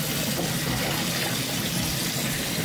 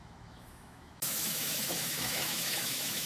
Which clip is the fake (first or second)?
second